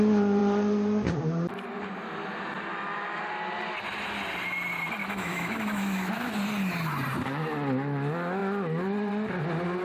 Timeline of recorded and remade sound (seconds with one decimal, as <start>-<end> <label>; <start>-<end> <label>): 0.0-2.7 recorded; 2.7-3.2 remade; 3.2-5.0 recorded; 5.0-6.3 remade; 6.3-9.8 recorded